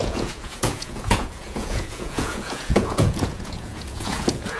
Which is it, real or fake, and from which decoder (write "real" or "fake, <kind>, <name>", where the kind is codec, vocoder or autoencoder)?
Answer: fake, vocoder, Vocos